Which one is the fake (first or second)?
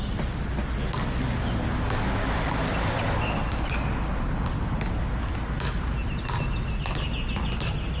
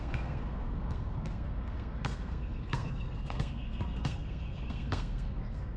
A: second